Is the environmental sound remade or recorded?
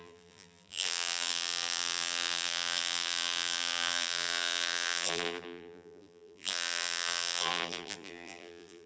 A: remade